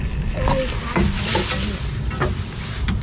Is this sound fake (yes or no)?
no